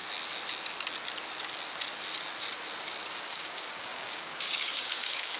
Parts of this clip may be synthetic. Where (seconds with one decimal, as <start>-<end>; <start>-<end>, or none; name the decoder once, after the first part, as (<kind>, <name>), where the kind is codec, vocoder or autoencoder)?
3.2-5.4 (codec, DAC)